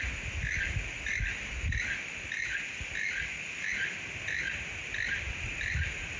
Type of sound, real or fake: real